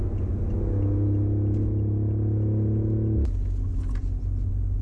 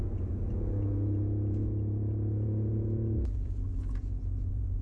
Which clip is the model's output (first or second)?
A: second